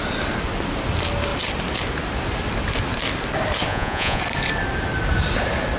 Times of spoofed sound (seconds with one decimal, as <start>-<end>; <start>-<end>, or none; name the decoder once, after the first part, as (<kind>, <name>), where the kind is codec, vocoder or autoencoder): 3.7-4.2 (vocoder, Vocos)